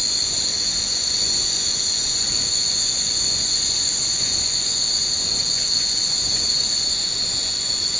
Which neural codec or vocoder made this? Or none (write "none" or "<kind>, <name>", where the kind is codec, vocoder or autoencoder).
vocoder, Vocos